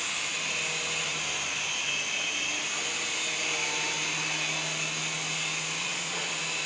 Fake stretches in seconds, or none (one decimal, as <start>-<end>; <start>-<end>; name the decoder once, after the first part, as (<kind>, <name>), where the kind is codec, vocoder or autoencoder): 5.8-6.3 (vocoder, Vocos)